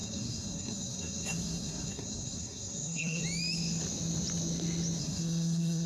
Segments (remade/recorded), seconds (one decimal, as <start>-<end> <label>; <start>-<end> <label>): 0.0-3.2 remade; 3.2-5.0 recorded; 5.0-5.9 remade